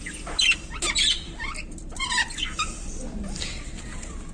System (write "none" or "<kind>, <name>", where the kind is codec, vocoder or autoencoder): none